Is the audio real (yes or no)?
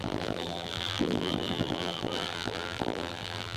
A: no